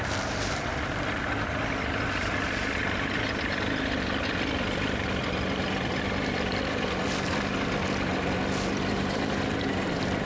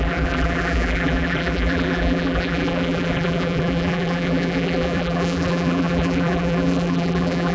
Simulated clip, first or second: second